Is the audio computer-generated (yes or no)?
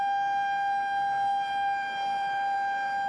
no